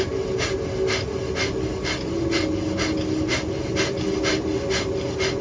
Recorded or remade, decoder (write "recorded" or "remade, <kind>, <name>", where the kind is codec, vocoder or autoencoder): recorded